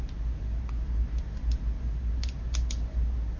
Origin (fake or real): real